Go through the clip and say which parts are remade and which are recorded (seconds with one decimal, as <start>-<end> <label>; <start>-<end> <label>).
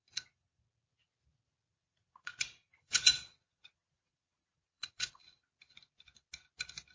0.0-0.6 remade; 0.6-1.7 recorded; 1.7-5.4 remade; 5.4-6.9 recorded